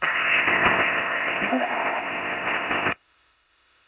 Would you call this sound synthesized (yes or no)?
yes